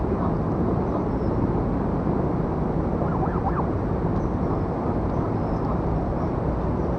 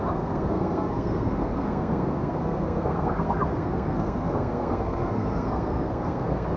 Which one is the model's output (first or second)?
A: second